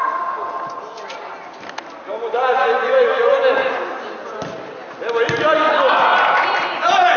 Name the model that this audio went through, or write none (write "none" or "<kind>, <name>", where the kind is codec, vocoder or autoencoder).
none